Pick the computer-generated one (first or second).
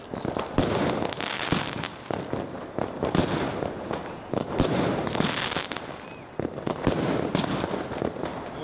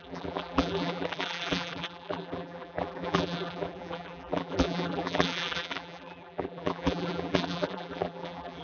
second